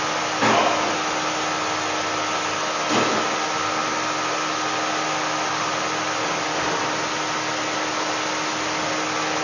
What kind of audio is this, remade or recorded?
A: recorded